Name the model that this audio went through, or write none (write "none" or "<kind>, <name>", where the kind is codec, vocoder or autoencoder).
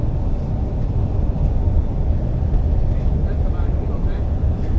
vocoder, BigVGAN v2